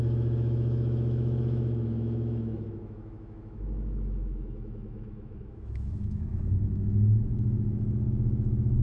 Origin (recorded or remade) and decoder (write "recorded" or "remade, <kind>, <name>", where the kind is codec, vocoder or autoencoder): remade, autoencoder, DAC-VAE